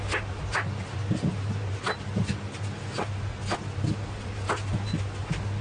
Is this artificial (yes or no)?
no